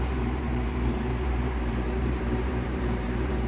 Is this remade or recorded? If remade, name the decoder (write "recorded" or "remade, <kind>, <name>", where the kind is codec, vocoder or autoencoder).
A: remade, vocoder, BigVGAN v2